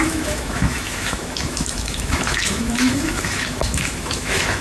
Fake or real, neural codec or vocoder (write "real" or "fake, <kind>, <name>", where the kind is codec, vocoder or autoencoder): fake, autoencoder, DAC-VAE